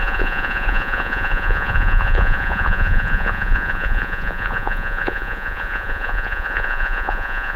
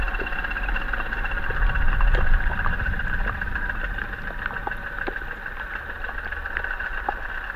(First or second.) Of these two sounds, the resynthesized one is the first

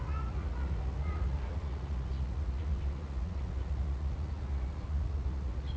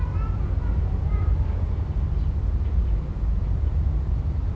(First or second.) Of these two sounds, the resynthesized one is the first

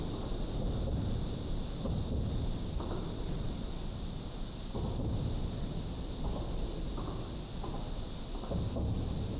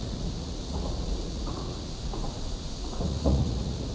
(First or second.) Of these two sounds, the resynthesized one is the second